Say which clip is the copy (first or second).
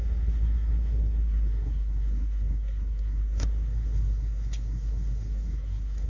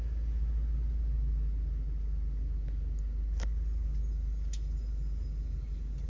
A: first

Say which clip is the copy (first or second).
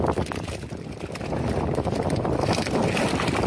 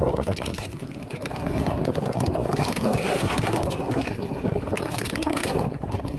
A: second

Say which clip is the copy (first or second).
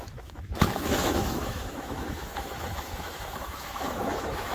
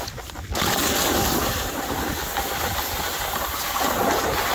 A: first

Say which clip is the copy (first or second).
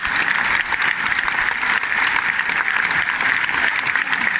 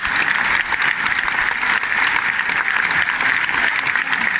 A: first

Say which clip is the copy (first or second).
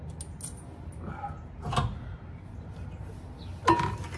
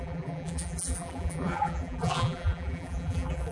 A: second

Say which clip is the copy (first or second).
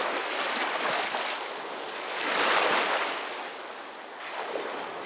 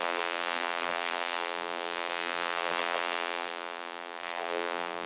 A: second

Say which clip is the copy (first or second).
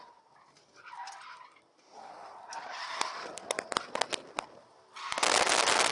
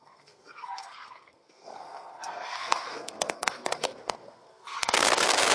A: second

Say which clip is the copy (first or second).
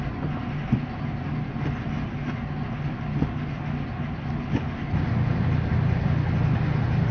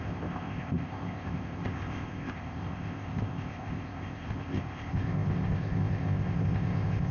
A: second